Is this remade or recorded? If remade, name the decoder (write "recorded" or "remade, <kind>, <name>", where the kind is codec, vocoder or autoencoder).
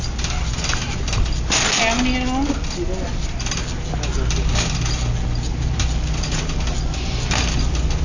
recorded